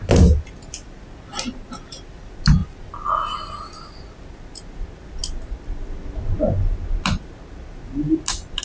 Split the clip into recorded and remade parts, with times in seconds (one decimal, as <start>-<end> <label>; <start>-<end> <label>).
0.0-8.6 recorded